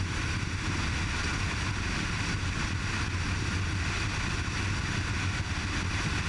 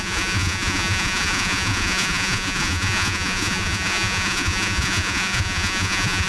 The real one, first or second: first